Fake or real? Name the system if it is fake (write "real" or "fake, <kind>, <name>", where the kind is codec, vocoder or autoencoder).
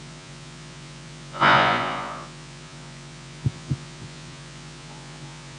fake, vocoder, Vocos